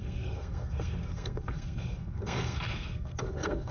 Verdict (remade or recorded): remade